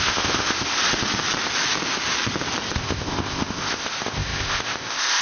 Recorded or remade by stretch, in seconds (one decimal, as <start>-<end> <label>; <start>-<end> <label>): 0.0-0.8 remade; 0.8-2.8 recorded; 2.8-5.2 remade